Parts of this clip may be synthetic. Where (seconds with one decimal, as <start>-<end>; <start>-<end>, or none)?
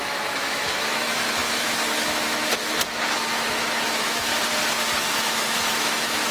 0.0-4.3; 5.1-6.3